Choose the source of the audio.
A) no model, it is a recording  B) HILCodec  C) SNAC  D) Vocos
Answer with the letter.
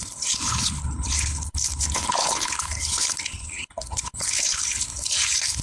B